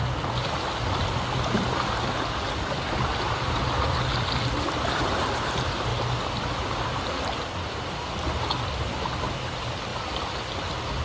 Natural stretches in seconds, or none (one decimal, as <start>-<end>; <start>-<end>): 0.0-11.0